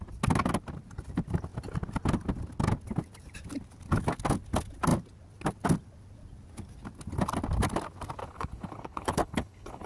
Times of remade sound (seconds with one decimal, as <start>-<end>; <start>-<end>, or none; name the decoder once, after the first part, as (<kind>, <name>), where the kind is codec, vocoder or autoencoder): 8.2-9.9 (codec, HILCodec)